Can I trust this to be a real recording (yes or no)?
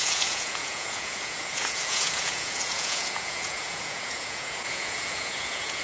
no